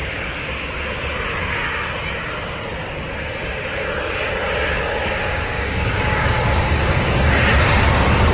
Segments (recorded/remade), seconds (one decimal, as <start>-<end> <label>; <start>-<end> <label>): 0.0-1.0 remade; 1.0-5.0 recorded; 5.0-6.8 remade; 6.8-8.3 recorded